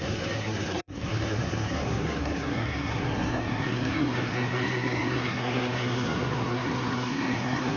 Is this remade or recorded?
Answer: remade